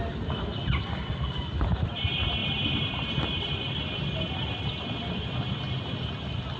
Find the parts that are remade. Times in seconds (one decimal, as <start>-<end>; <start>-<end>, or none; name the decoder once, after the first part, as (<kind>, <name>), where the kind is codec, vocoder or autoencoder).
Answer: none